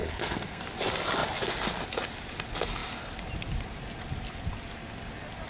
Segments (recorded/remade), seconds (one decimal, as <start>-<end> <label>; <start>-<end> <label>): 0.0-0.6 remade; 0.6-5.5 recorded